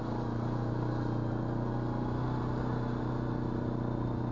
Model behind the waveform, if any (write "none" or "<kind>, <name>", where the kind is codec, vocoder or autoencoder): none